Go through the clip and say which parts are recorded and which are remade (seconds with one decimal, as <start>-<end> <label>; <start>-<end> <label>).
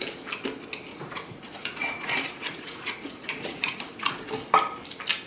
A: 0.0-0.9 recorded; 0.9-4.1 remade; 4.1-5.3 recorded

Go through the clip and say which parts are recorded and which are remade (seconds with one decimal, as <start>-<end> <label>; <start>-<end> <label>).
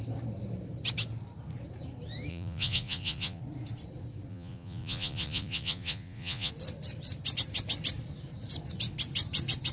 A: 0.0-2.3 recorded; 2.3-3.4 remade; 3.4-4.3 recorded; 4.3-6.5 remade; 6.5-9.7 recorded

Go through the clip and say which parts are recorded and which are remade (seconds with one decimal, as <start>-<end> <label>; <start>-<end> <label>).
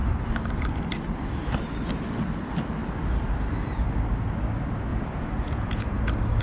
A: 0.0-4.9 recorded; 4.9-6.0 remade; 6.0-6.4 recorded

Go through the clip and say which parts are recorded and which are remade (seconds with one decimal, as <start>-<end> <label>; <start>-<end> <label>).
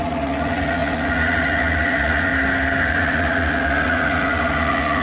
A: 0.0-2.3 remade; 2.3-2.8 recorded; 2.8-5.0 remade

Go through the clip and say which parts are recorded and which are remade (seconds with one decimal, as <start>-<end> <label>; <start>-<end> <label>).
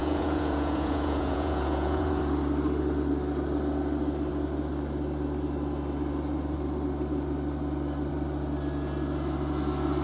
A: 0.0-2.2 remade; 2.2-10.0 recorded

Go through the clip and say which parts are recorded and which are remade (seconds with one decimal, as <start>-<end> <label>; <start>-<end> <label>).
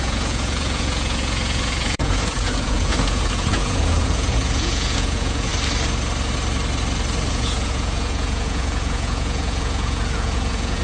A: 0.0-5.5 remade; 5.5-7.3 recorded; 7.3-10.8 remade